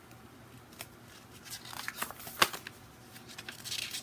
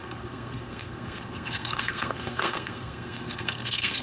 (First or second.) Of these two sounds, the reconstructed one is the second